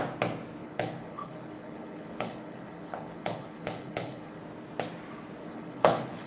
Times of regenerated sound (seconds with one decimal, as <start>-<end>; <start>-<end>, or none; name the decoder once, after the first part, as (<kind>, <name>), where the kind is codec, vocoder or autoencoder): 0.6-4.4 (codec, HILCodec); 5.4-6.3